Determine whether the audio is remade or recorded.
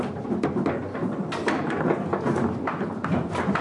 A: recorded